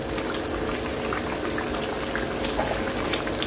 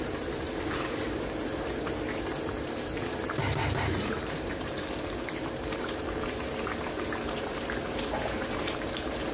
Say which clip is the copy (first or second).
second